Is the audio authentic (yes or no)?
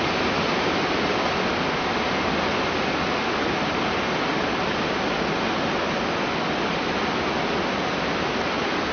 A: yes